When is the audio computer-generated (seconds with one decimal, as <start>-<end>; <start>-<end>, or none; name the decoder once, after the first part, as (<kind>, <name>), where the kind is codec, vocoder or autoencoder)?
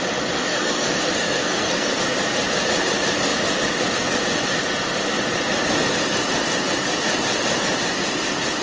0.5-2.0 (codec, SNAC)